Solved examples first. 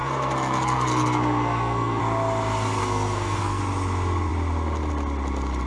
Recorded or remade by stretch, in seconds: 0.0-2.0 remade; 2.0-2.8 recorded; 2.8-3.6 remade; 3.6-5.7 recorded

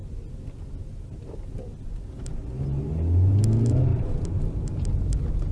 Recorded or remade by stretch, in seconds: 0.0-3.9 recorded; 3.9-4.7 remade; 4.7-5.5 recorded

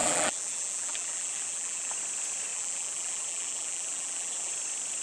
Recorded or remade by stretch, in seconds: 0.0-1.9 remade; 1.9-2.5 recorded; 2.5-4.5 remade; 4.5-5.0 recorded